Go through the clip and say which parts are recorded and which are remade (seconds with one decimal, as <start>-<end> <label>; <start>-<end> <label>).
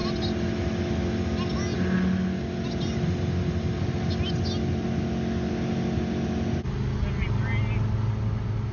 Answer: 0.0-8.7 recorded